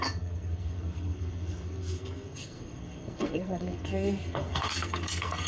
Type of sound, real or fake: fake